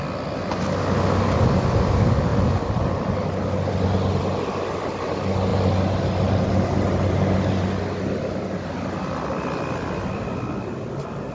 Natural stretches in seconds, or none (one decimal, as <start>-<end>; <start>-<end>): 0.0-11.3